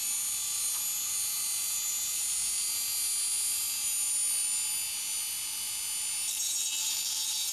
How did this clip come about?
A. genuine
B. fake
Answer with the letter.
A